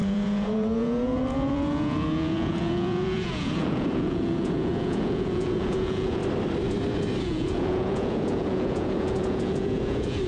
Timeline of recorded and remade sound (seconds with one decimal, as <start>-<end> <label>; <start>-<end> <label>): 0.0-6.2 remade; 6.2-7.2 recorded; 7.2-10.3 remade